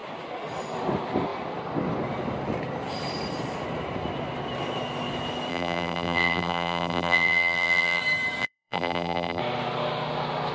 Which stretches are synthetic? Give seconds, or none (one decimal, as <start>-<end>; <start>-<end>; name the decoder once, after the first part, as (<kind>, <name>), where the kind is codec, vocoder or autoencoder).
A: 5.5-8.0 (vocoder, BigVGAN v2); 8.4-9.4

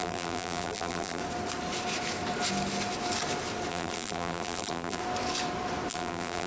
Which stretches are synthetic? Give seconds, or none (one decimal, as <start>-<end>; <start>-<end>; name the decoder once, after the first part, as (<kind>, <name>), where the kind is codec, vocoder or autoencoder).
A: 0.0-1.2 (vocoder, BigVGAN v2); 3.7-5.0; 5.9-6.5

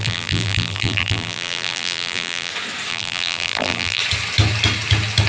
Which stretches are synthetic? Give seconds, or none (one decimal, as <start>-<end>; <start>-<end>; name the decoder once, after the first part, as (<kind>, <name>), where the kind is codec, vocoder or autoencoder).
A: 0.0-2.5 (vocoder, BigVGAN v2); 2.9-4.0

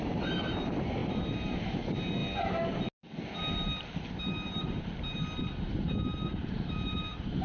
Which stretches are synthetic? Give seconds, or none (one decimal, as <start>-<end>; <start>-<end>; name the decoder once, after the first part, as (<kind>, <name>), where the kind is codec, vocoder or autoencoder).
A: 0.0-2.2 (vocoder, BigVGAN v2); 6.2-7.4